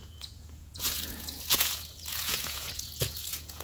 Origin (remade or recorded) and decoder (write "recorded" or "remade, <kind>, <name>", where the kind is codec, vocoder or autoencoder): remade, vocoder, Vocos